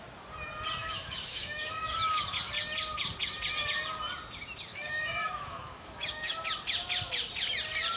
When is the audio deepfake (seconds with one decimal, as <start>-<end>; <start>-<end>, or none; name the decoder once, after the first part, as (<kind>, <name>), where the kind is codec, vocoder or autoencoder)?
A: 0.8-2.2 (autoencoder, DAC-VAE); 4.7-6.4

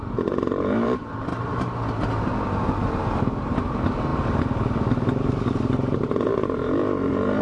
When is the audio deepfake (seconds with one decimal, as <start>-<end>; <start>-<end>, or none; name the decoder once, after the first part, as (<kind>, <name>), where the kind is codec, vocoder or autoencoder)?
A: 0.0-7.4 (vocoder, BigVGAN v2)

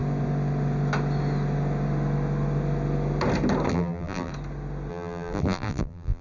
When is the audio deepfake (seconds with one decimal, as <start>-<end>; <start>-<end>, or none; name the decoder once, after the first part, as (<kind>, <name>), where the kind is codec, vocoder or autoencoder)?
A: 3.7-4.3 (vocoder, BigVGAN v2); 4.9-6.2

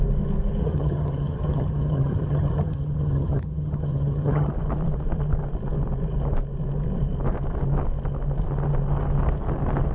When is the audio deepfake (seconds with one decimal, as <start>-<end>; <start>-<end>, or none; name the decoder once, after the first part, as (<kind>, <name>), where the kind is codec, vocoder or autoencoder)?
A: 0.6-4.5 (vocoder, HiFi-GAN)

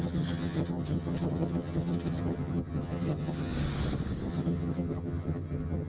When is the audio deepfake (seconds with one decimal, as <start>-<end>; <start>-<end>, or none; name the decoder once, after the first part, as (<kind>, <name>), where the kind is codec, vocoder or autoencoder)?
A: 0.0-3.5 (vocoder, HiFi-GAN); 4.3-5.9

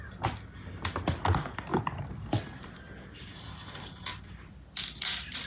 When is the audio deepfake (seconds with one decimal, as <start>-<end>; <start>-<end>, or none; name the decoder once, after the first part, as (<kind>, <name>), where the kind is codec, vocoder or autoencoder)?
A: 1.7-5.0 (vocoder, BigVGAN v2)